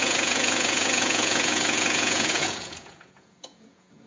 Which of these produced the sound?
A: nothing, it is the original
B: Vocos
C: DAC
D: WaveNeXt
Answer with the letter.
B